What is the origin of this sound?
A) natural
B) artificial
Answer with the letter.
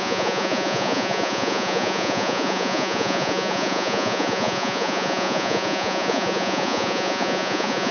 B